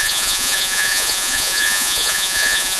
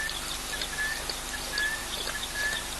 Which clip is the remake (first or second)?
first